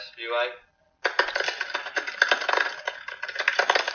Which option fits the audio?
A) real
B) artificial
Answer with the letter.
A